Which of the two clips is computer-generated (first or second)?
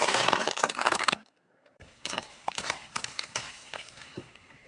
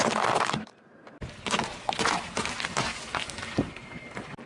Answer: first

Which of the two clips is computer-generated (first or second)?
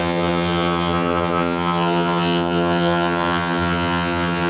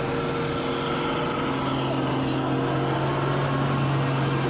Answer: first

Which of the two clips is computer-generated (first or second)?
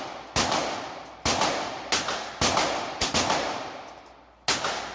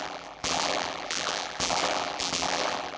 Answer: second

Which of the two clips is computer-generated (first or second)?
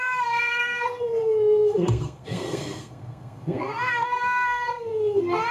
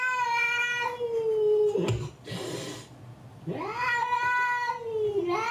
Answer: first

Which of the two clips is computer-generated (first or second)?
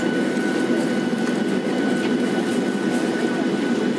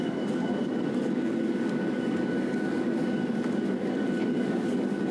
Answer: second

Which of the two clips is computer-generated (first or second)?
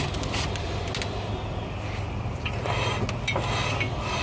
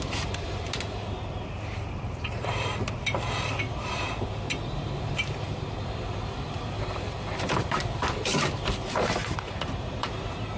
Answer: second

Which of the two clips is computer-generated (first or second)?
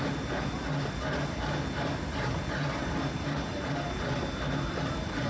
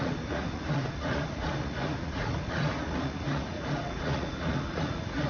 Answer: second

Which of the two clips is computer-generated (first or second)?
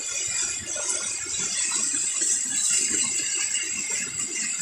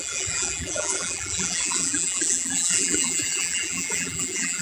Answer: second